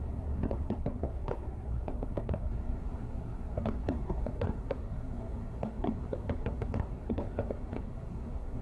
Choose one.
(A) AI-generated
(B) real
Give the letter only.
A